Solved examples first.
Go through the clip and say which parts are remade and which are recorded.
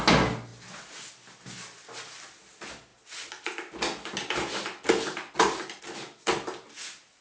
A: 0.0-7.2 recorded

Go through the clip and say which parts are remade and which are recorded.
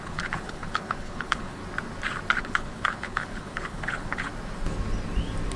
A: 0.0-1.6 remade; 1.6-2.4 recorded; 2.4-4.3 remade; 4.3-5.6 recorded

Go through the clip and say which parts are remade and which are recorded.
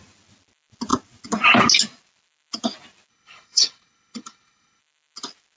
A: 0.0-3.1 recorded; 3.1-4.8 remade; 4.8-5.6 recorded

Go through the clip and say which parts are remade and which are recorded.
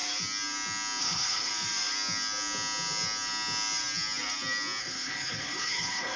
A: 0.0-1.0 recorded; 1.0-1.5 remade; 1.5-4.8 recorded; 4.8-6.2 remade